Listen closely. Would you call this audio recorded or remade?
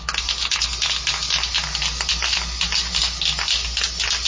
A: recorded